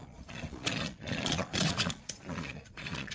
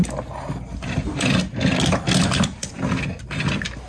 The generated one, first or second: first